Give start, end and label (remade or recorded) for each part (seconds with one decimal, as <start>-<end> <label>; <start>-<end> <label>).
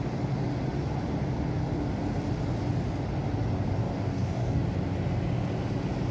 0.0-3.8 recorded; 3.8-4.6 remade; 4.6-6.1 recorded